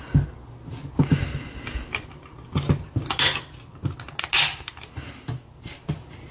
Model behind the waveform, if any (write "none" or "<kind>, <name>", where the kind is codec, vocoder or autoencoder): none